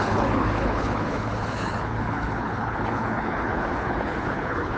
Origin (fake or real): fake